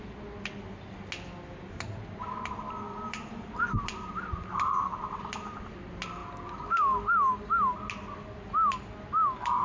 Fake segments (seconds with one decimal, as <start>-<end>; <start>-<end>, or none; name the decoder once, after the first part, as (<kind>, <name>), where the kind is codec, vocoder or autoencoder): none